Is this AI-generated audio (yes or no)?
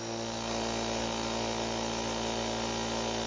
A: no